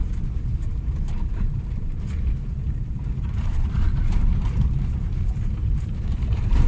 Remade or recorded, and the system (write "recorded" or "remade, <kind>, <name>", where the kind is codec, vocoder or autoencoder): remade, vocoder, BigVGAN v2